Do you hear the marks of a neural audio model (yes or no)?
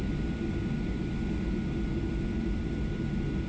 no